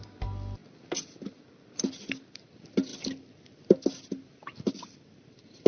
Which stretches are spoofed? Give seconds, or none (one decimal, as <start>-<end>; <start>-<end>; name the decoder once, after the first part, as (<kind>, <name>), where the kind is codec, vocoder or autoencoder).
none

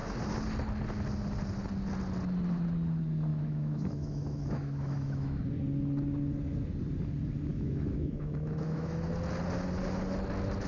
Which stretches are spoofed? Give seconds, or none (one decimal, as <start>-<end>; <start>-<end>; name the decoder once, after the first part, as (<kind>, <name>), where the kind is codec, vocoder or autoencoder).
3.3-5.4 (autoencoder, DAC-VAE); 7.5-9.1

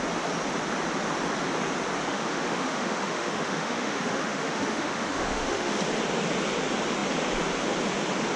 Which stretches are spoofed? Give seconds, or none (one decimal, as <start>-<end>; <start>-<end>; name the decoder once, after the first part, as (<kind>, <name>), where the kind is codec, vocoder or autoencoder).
2.1-5.8 (autoencoder, DAC-VAE)